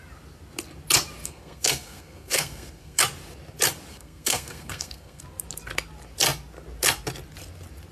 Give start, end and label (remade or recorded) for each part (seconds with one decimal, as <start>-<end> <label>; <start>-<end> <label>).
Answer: 0.0-1.2 recorded; 1.2-3.0 remade; 3.0-3.9 recorded; 3.9-5.2 remade; 5.2-7.9 recorded